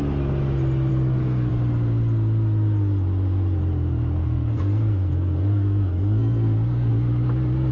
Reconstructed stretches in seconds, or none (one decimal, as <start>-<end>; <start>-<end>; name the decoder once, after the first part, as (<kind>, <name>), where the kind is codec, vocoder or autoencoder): 0.9-1.5 (codec, SNAC); 4.2-6.9